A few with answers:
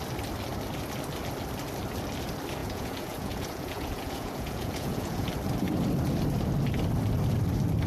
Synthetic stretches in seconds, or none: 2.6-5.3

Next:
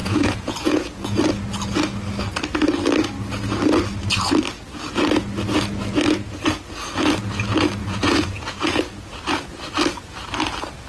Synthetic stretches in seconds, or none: 0.0-1.2; 7.8-8.8

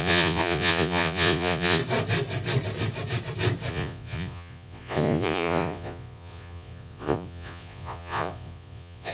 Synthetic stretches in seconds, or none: 0.0-1.8; 3.7-9.1